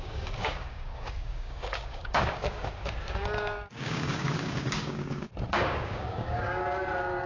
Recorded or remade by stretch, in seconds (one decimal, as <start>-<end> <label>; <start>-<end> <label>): 0.0-6.6 remade; 6.6-7.3 recorded